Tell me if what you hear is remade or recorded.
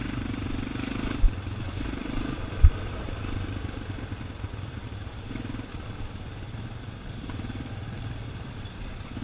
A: remade